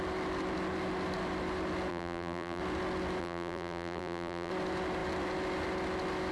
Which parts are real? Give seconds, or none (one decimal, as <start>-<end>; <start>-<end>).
0.0-1.9; 2.6-3.2; 4.5-6.3